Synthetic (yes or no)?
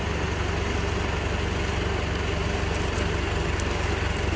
no